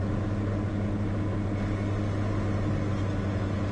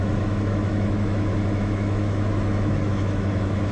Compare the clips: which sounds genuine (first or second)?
first